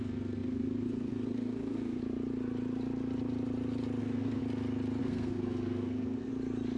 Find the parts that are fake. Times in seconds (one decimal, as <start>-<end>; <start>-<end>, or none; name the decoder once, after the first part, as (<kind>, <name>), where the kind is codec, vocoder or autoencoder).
0.0-2.0 (codec, SNAC); 4.0-4.4; 5.0-6.3